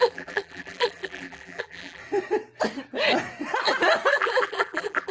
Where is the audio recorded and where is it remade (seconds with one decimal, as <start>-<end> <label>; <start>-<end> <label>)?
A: 0.0-2.0 remade; 2.0-4.1 recorded; 4.1-5.1 remade